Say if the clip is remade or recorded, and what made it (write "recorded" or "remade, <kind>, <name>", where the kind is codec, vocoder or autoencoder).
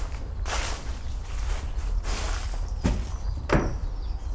recorded